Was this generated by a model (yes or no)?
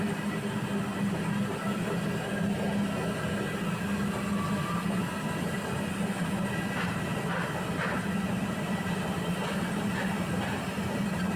no